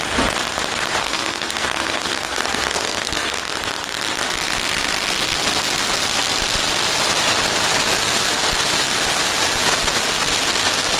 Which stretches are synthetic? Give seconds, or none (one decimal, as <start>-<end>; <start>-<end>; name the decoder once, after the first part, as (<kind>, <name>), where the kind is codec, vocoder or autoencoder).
1.0-3.4 (codec, SNAC)